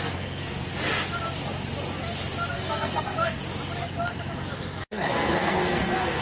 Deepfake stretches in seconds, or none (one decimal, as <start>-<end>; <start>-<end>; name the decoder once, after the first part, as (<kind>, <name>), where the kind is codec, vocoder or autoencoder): 0.0-0.7 (codec, SNAC); 2.5-3.4; 4.9-6.2